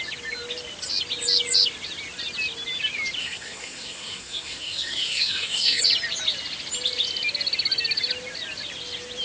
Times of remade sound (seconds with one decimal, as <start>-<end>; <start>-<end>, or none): 3.2-5.8